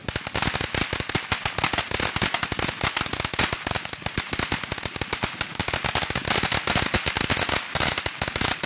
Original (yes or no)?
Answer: yes